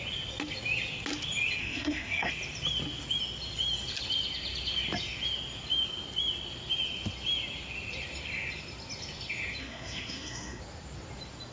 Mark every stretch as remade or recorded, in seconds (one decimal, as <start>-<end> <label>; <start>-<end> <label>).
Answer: 0.0-1.6 recorded; 1.6-2.3 remade; 2.3-9.6 recorded; 9.6-10.6 remade; 10.6-11.5 recorded

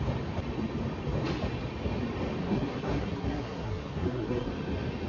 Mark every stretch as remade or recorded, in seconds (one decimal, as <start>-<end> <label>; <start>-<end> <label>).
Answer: 0.0-2.4 recorded; 2.4-4.5 remade; 4.5-5.1 recorded

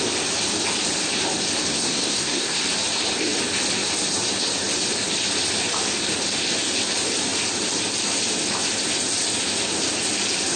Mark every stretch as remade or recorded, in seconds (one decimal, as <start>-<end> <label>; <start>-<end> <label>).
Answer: 0.0-1.7 recorded; 1.7-2.6 remade; 2.6-10.6 recorded

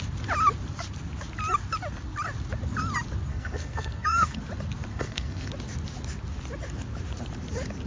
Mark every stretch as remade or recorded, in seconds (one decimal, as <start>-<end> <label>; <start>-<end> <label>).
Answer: 0.0-3.3 recorded; 3.3-4.4 remade; 4.4-4.9 recorded; 4.9-5.5 remade; 5.5-7.9 recorded

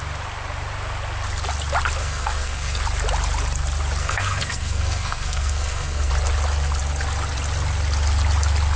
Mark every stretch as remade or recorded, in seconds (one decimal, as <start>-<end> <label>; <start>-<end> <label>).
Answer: 0.0-2.0 recorded; 2.0-2.8 remade; 2.8-4.0 recorded; 4.0-6.1 remade; 6.1-8.8 recorded

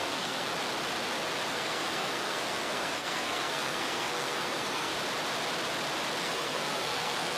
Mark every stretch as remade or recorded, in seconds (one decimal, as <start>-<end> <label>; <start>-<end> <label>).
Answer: 0.0-0.5 remade; 0.5-1.5 recorded; 1.5-4.9 remade; 4.9-6.2 recorded; 6.2-7.4 remade

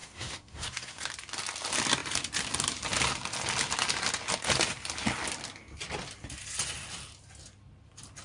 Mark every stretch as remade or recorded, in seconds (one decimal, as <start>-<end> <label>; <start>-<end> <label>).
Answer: 0.0-1.0 remade; 1.0-8.2 recorded

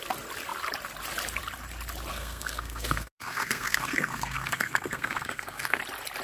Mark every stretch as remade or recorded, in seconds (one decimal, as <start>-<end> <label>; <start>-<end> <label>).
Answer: 0.0-2.1 recorded; 2.1-5.8 remade; 5.8-6.2 recorded